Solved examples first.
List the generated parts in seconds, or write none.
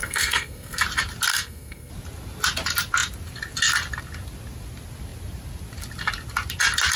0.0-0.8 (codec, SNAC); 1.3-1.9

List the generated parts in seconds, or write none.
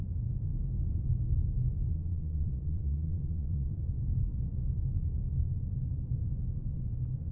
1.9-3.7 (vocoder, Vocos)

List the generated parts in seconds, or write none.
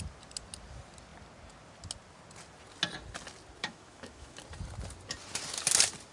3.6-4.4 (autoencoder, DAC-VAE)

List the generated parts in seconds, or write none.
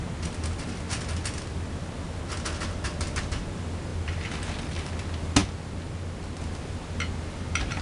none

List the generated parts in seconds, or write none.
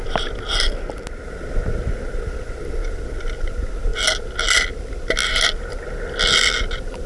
none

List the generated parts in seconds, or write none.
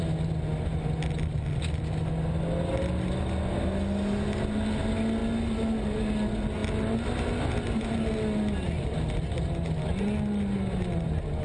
none